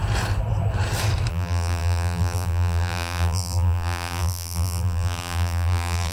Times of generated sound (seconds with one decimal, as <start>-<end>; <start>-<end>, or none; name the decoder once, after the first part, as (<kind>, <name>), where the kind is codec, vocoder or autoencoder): 1.3-6.1 (vocoder, BigVGAN v2)